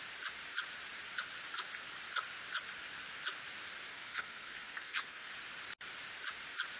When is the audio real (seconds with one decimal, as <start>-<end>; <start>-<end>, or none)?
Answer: 0.0-3.9; 5.3-6.8